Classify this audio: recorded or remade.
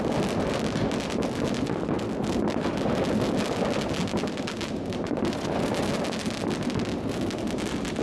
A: recorded